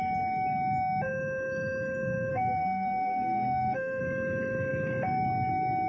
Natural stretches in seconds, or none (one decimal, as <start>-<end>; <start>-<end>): 0.0-2.3; 4.0-5.9